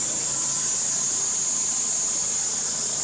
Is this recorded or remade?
recorded